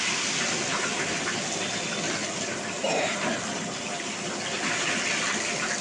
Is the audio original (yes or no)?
yes